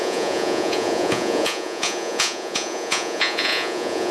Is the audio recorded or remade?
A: remade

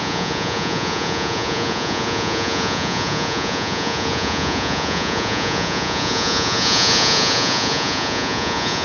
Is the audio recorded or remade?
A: remade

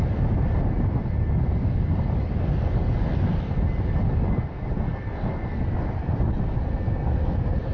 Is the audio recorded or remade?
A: recorded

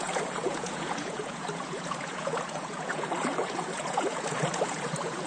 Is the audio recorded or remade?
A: remade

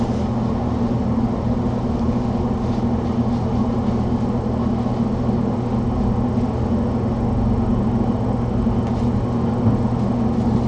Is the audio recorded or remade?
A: recorded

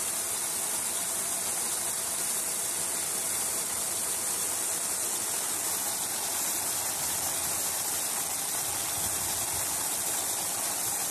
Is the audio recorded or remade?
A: recorded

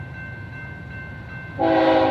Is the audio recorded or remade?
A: recorded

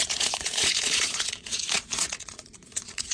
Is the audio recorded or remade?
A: remade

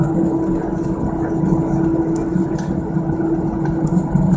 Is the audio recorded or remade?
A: recorded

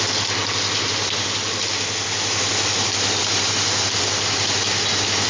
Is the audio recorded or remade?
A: recorded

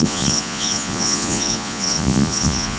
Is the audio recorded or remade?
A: remade